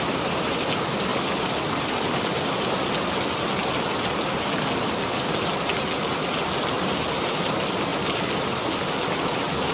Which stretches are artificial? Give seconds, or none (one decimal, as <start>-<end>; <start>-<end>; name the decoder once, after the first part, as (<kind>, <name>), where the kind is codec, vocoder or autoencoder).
none